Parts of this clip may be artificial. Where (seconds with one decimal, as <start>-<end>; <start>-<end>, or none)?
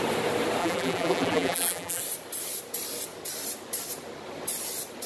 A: 0.6-2.0